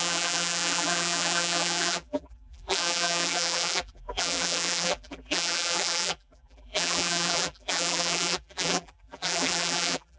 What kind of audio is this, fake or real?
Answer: fake